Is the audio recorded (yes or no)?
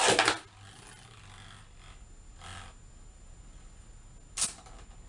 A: yes